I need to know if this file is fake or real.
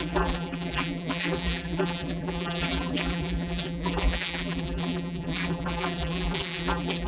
fake